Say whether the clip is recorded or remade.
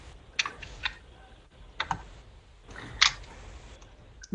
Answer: recorded